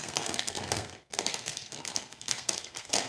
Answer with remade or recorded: remade